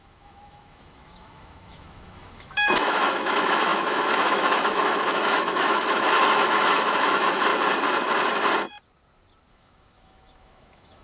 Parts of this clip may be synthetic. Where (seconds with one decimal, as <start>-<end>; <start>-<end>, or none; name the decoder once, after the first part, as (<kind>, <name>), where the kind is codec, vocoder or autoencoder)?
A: 0.0-7.5 (autoencoder, DAC-VAE); 9.5-11.0